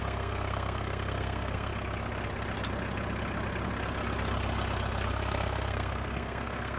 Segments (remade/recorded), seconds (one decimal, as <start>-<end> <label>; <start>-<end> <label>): 0.0-1.7 remade; 1.7-5.1 recorded; 5.1-6.8 remade